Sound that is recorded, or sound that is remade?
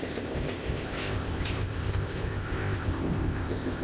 remade